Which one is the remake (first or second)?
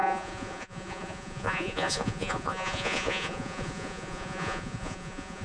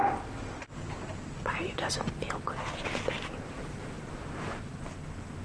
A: first